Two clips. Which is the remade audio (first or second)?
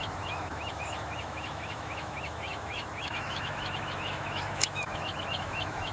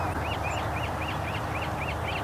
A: first